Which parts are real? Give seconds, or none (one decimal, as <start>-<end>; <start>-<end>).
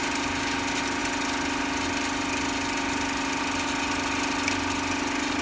0.0-5.4